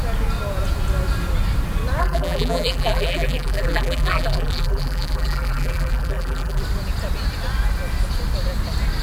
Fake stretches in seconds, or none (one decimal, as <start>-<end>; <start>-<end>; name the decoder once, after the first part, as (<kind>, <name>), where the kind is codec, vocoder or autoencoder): 2.0-6.6 (vocoder, BigVGAN v2)